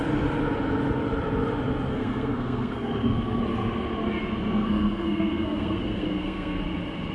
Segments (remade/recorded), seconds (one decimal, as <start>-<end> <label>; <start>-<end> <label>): 0.0-1.9 recorded; 1.9-3.4 remade; 3.4-4.4 recorded; 4.4-6.6 remade; 6.6-7.1 recorded